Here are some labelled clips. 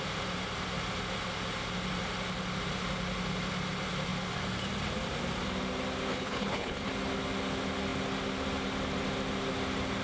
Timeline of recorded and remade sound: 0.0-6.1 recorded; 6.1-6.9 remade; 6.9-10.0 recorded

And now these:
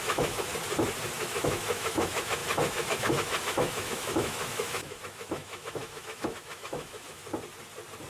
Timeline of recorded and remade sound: 0.0-0.5 remade; 0.5-1.2 recorded; 1.2-7.2 remade; 7.2-8.1 recorded

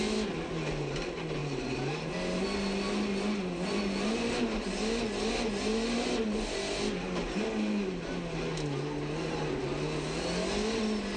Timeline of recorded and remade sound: 0.0-11.2 recorded

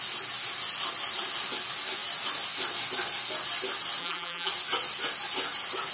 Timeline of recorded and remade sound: 0.0-4.0 recorded; 4.0-4.5 remade; 4.5-5.9 recorded